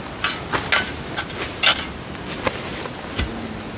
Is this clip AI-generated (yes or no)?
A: no